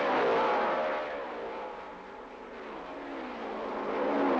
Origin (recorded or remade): recorded